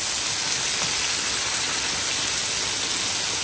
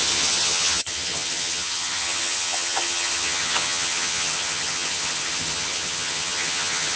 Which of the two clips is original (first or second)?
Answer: first